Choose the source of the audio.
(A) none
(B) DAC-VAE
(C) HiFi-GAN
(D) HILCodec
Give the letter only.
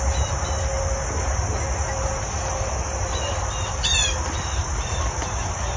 A